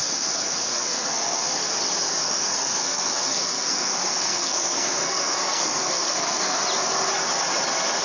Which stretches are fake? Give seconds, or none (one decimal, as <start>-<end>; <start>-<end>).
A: 0.0-1.7; 2.2-6.6